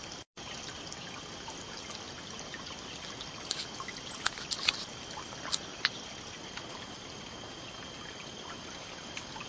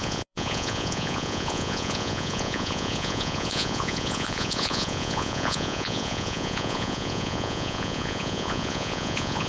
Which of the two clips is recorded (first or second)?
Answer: first